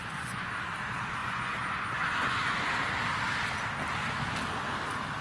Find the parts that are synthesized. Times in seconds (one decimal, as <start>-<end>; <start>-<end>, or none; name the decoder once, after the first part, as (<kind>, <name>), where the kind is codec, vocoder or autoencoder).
0.0-0.5 (vocoder, Vocos); 1.2-2.7